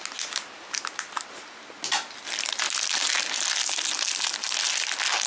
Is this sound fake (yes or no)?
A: no